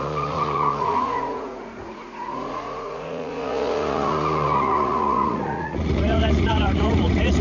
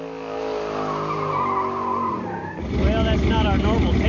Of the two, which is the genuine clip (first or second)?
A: second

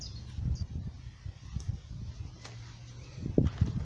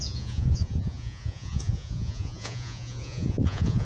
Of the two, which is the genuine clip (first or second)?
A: first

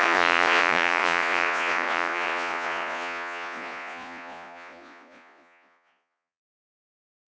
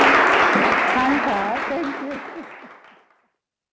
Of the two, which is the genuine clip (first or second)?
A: second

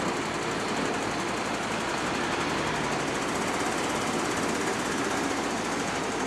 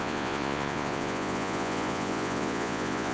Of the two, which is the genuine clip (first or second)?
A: first